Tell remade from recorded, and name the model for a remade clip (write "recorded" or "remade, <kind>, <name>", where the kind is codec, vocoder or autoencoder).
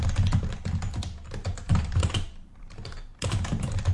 remade, vocoder, BigVGAN v2